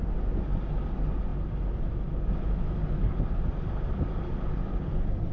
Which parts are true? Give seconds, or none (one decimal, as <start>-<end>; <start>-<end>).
0.0-5.3